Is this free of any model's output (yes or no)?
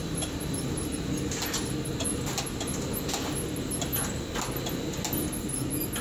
yes